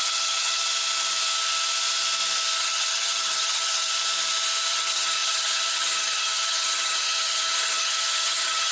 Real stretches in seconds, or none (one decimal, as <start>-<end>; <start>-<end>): 0.6-2.6; 3.9-4.7